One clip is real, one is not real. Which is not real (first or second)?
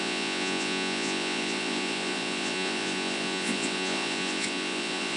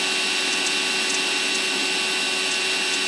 first